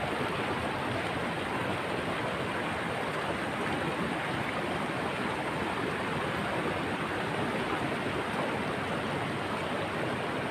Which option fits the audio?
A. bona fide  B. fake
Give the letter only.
A